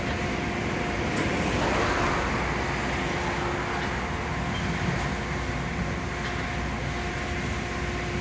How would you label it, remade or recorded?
recorded